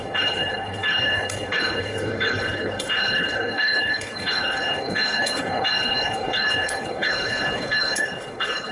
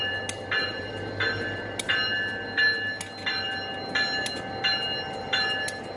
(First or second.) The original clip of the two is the second